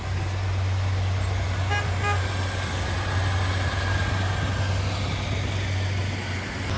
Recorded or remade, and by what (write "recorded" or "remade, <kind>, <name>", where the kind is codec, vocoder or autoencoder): recorded